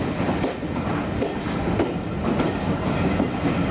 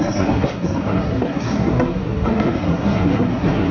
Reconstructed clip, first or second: second